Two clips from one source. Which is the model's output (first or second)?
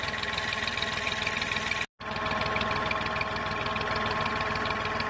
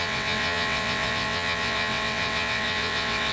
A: second